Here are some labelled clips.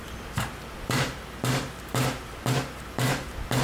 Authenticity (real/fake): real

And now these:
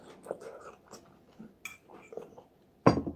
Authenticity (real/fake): real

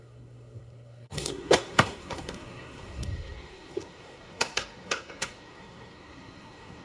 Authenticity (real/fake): fake